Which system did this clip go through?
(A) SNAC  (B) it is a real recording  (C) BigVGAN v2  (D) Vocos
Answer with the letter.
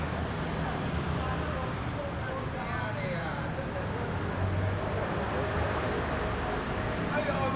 B